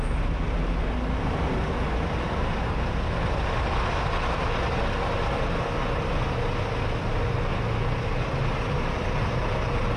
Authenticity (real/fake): real